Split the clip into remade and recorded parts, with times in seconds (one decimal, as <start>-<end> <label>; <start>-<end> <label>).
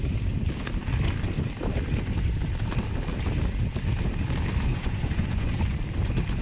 0.0-4.7 recorded; 4.7-5.6 remade; 5.6-6.4 recorded